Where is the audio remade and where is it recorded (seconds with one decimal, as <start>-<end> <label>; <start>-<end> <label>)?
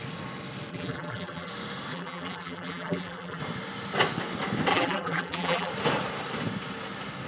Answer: 0.0-0.7 recorded; 0.7-1.5 remade; 1.5-1.9 recorded; 1.9-3.4 remade; 3.4-4.7 recorded; 4.7-5.7 remade; 5.7-7.3 recorded